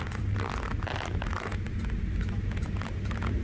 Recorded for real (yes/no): yes